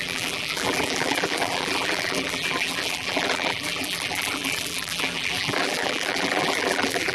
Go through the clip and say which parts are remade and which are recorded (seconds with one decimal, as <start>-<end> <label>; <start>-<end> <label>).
0.0-7.1 remade